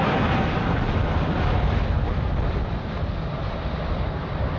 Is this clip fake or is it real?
real